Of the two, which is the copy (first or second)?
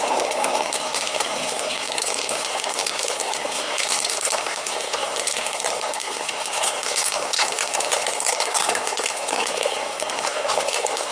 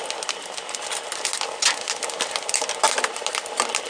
first